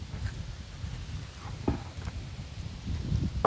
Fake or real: real